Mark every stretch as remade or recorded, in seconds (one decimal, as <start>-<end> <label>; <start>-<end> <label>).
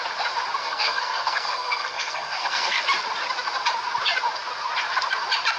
0.0-0.6 recorded; 0.6-2.8 remade; 2.8-5.6 recorded